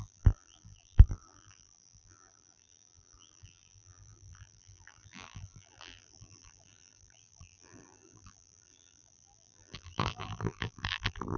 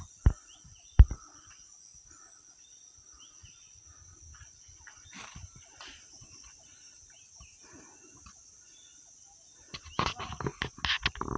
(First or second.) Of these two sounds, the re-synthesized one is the first